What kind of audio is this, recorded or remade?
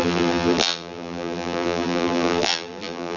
remade